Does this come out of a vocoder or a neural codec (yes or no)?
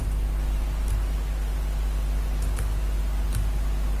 no